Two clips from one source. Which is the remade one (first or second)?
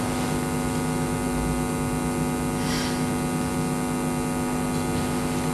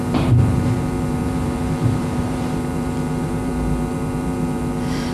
second